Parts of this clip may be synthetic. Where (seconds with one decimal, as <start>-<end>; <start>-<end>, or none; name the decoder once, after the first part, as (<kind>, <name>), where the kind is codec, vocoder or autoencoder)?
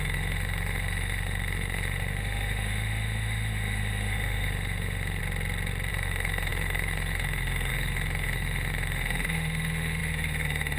0.0-5.2 (autoencoder, DAC-VAE); 5.9-10.8